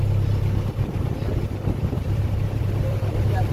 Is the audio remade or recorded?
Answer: remade